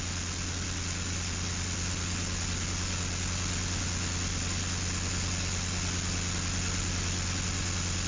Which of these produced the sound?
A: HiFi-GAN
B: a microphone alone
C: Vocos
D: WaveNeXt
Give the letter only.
B